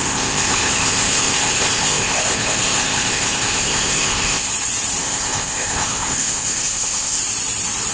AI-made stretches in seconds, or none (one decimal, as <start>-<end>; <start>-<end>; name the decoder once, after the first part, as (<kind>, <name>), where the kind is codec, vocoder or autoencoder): 0.0-4.5 (codec, ZipCodec); 5.0-7.2